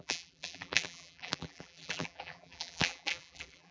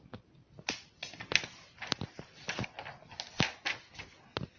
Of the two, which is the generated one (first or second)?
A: first